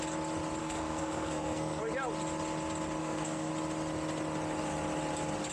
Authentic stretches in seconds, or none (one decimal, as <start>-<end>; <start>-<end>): 0.0-0.6; 1.8-3.0; 3.5-5.5